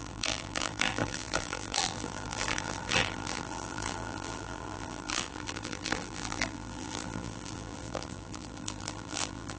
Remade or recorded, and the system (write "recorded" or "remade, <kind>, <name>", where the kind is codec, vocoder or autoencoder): remade, vocoder, BigVGAN v2